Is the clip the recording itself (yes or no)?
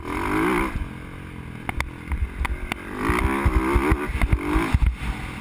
yes